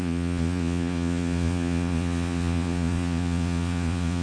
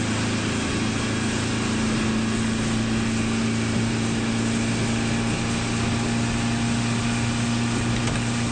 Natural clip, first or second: second